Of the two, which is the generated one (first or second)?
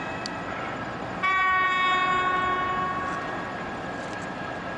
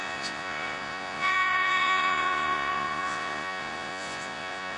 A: second